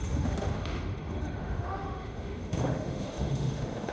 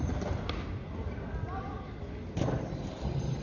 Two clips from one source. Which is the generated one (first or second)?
first